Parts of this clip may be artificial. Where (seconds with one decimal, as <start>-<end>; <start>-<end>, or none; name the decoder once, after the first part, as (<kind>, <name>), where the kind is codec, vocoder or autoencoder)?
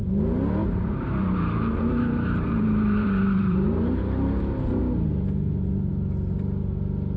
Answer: 0.6-4.8 (vocoder, BigVGAN v2)